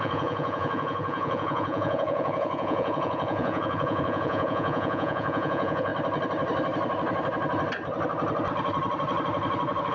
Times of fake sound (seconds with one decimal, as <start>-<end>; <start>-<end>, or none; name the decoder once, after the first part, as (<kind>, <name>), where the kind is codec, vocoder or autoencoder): 0.0-5.9 (vocoder, Vocos)